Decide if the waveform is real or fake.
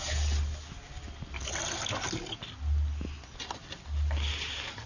real